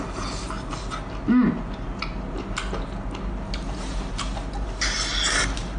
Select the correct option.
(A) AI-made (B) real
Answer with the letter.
B